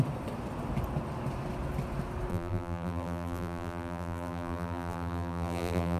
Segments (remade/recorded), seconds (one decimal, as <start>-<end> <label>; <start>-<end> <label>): 0.0-2.3 recorded; 2.3-6.0 remade